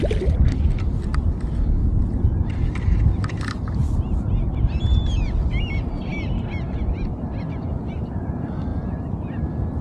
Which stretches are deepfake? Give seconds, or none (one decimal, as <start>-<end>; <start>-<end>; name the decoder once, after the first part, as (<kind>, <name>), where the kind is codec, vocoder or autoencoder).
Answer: 1.8-3.0 (vocoder, BigVGAN v2)